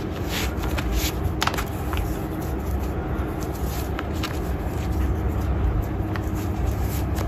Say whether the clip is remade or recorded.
recorded